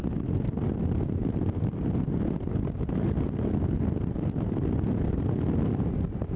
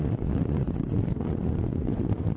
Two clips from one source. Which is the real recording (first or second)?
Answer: first